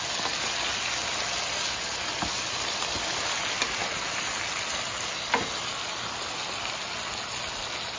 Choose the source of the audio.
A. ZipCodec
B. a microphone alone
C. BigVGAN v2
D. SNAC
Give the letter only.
B